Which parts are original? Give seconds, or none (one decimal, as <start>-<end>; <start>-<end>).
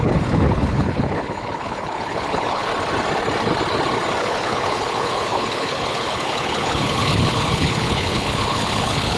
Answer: 2.7-4.2